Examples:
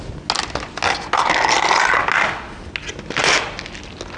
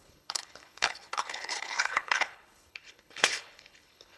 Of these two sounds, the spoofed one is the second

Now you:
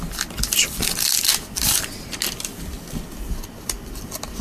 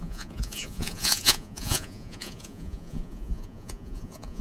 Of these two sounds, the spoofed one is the second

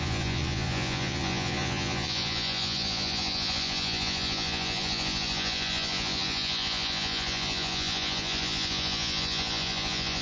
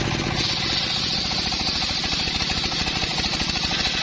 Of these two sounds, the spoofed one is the first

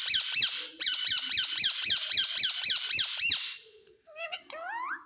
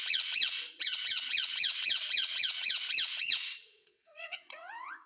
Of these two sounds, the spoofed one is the second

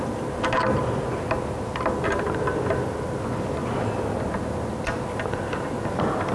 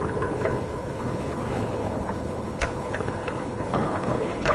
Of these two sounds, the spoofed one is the second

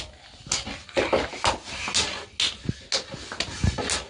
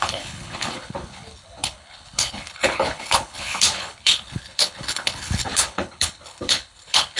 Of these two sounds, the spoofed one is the second